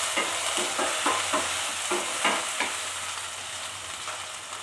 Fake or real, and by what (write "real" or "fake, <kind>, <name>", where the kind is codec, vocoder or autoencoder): real